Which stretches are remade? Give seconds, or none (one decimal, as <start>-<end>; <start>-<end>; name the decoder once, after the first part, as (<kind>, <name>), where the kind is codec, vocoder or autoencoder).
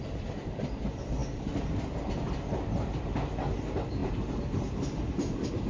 none